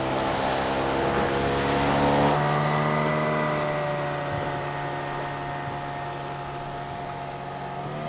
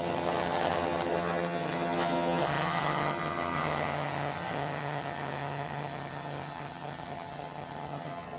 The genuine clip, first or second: first